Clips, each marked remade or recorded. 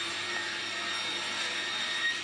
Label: remade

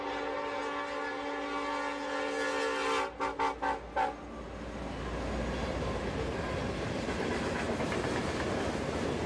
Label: recorded